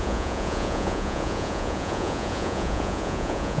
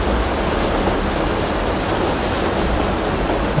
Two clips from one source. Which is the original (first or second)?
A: second